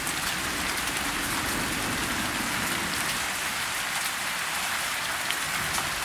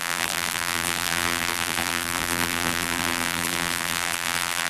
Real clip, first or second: first